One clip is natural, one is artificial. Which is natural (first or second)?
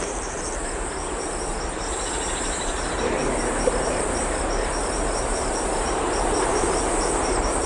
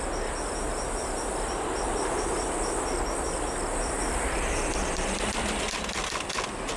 second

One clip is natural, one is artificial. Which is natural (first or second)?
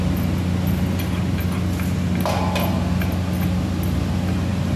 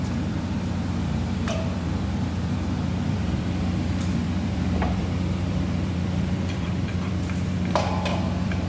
first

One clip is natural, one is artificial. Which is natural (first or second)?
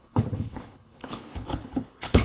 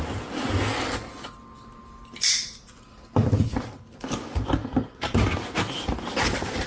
second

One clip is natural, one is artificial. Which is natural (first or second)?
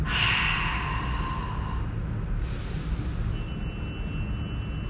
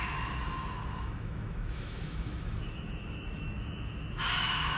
first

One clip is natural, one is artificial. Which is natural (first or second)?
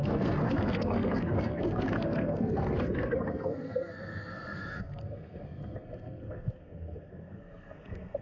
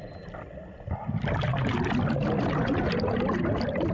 second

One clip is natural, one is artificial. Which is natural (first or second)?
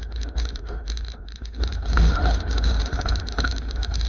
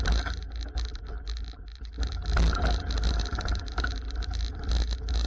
second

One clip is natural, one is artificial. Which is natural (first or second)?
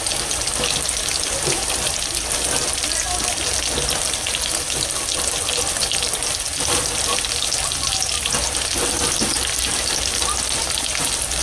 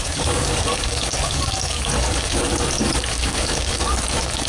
first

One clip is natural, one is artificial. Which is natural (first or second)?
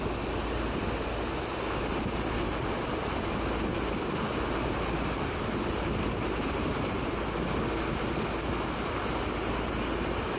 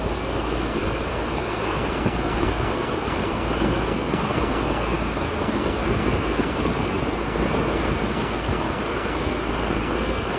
first